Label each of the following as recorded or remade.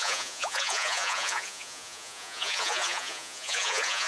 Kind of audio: remade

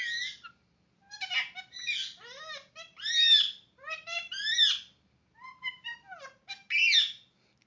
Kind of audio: recorded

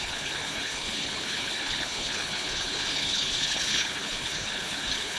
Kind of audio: remade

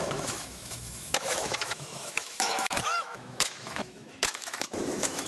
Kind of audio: remade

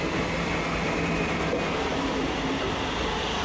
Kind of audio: recorded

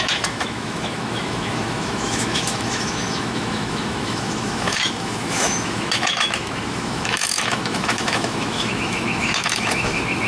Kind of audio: remade